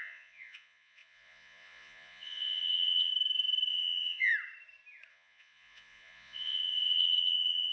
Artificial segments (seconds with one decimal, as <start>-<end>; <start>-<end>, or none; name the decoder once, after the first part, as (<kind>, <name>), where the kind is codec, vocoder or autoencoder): 0.0-3.1 (vocoder, Vocos); 3.7-4.3; 5.1-7.7